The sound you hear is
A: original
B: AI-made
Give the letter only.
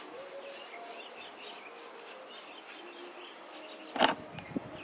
A